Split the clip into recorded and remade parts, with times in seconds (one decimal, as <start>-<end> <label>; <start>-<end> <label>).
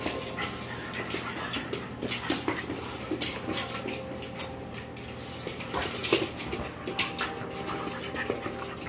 0.0-8.9 recorded